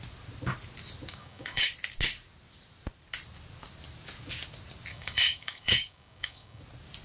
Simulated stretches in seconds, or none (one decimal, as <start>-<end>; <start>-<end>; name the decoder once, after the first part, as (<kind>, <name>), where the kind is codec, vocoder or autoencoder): 1.1-1.7 (codec, DAC); 4.9-6.6